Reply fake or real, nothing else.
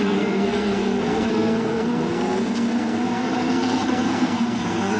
fake